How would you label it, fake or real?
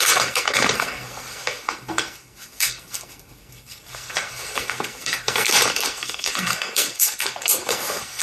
fake